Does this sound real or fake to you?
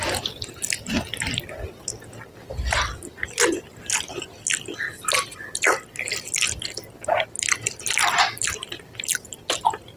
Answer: real